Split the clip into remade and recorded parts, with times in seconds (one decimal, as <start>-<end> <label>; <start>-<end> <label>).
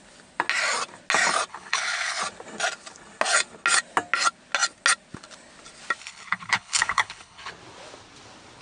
0.0-1.5 recorded; 1.5-2.2 remade; 2.2-6.0 recorded; 6.0-7.5 remade; 7.5-8.6 recorded